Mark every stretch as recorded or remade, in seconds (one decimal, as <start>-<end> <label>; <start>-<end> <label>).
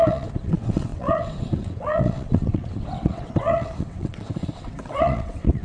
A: 0.0-5.6 remade